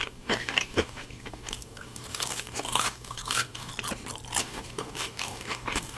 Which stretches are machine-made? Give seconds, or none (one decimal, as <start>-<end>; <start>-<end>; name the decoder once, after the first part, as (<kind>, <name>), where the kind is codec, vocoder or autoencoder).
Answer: 0.0-3.7 (codec, DAC); 4.4-6.0